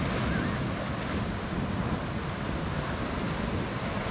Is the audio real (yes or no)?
yes